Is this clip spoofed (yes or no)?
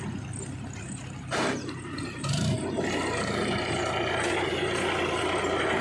no